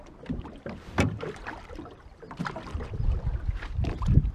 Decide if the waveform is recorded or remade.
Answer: remade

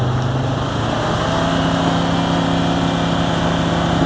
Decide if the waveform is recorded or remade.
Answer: recorded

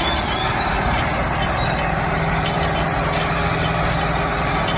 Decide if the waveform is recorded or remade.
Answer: recorded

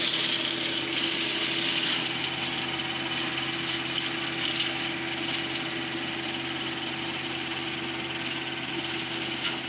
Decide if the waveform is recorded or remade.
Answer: recorded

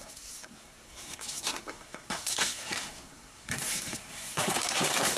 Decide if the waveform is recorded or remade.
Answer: remade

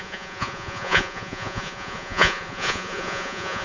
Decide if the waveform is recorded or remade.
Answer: remade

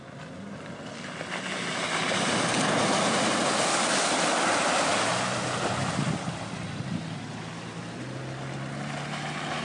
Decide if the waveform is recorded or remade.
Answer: recorded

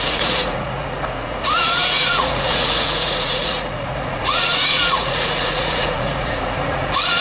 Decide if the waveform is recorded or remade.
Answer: remade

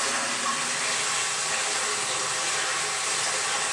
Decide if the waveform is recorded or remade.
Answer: recorded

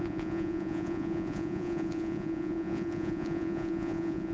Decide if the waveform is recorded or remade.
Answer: remade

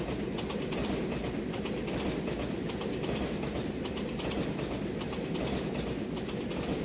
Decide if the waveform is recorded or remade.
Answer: recorded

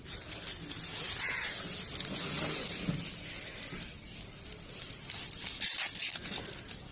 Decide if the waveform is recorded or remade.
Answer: recorded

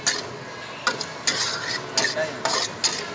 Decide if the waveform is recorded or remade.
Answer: recorded